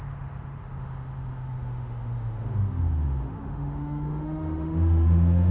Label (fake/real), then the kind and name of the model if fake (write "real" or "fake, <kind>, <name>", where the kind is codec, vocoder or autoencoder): fake, autoencoder, DAC-VAE